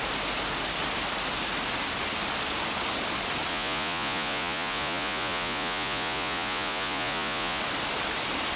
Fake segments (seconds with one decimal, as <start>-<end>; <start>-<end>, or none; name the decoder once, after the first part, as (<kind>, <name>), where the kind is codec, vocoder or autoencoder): 3.5-7.6 (vocoder, Vocos)